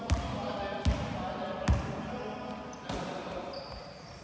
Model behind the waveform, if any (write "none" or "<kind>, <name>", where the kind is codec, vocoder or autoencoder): none